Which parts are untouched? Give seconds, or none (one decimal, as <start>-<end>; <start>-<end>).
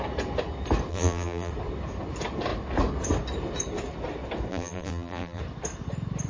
0.0-0.9; 1.5-4.5; 5.4-6.3